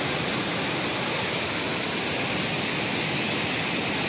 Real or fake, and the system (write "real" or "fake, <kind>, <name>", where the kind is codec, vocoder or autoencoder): real